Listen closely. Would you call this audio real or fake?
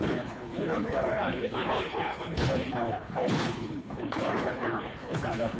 fake